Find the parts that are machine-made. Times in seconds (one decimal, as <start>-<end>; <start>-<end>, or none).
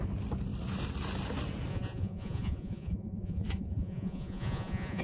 1.7-5.0